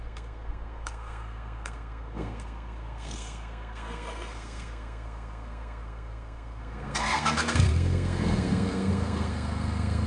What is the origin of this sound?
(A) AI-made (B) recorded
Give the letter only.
A